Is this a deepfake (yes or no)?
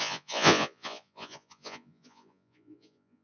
yes